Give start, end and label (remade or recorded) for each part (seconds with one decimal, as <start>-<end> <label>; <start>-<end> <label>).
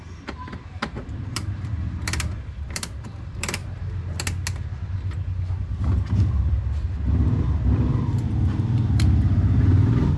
0.0-3.6 remade; 3.6-8.3 recorded; 8.3-10.2 remade